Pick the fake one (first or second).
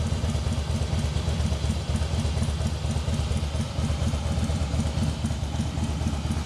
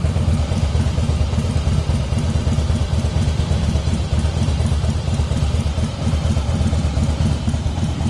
second